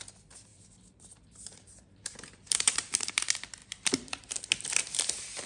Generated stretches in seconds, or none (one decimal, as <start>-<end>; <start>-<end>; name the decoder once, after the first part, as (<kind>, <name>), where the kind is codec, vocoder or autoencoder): 0.5-3.1 (vocoder, BigVGAN v2); 3.6-4.3